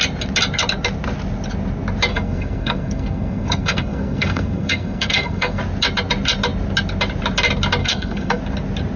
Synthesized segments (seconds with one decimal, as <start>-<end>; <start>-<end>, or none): 2.1-5.6; 7.8-8.4